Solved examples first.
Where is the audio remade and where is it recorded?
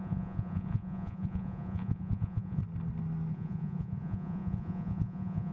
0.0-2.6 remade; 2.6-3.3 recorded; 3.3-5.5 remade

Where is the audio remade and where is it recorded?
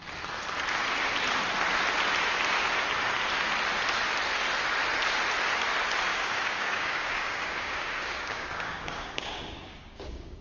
0.0-6.1 recorded; 6.1-10.4 remade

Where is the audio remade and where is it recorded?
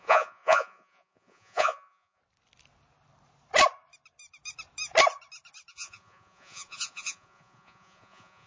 0.0-2.2 remade; 2.2-5.7 recorded; 5.7-8.5 remade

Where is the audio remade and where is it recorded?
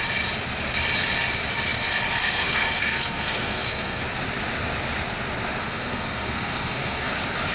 0.0-2.2 recorded; 2.2-4.0 remade; 4.0-5.6 recorded; 5.6-7.1 remade; 7.1-7.5 recorded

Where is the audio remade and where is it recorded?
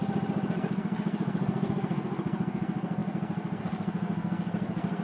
0.0-0.5 recorded; 0.5-5.0 remade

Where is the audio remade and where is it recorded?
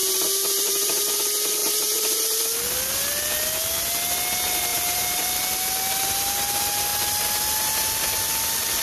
0.0-1.1 remade; 1.1-1.6 recorded; 1.6-2.4 remade; 2.4-4.7 recorded; 4.7-5.3 remade; 5.3-8.8 recorded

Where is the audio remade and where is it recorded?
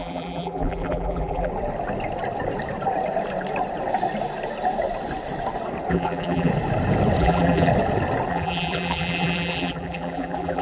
0.0-1.5 remade; 1.5-5.9 recorded; 5.9-6.5 remade; 6.5-7.2 recorded; 7.2-7.7 remade; 7.7-8.3 recorded; 8.3-10.6 remade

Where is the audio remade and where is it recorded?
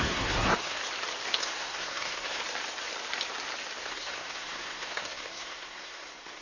0.0-0.8 remade; 0.8-1.4 recorded; 1.4-2.4 remade; 2.4-3.8 recorded; 3.8-6.4 remade